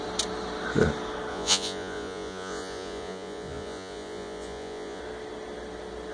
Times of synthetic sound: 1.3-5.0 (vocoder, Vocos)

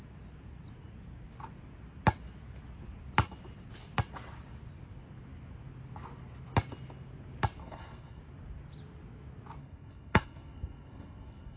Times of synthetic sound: 7.6-8.2 (codec, SNAC); 9.6-11.6

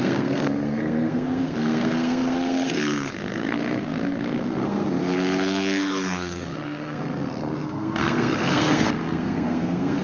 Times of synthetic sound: 0.0-10.0 (codec, SNAC)

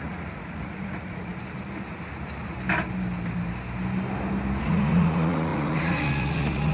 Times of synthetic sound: 0.0-1.3 (vocoder, Vocos); 4.6-6.7

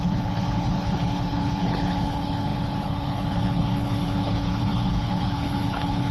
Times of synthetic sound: 0.0-6.1 (codec, HILCodec)